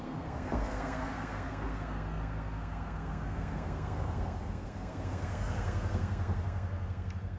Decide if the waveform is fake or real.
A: fake